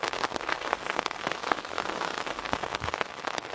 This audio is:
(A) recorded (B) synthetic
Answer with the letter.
B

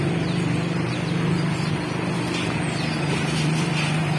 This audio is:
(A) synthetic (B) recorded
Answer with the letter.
B